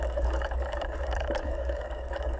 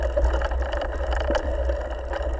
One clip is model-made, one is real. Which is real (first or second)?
second